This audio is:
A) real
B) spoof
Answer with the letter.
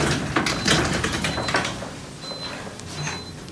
A